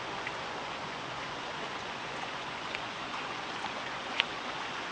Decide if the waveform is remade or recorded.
remade